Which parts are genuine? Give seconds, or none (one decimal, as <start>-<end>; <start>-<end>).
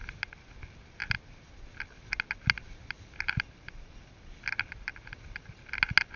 0.0-6.2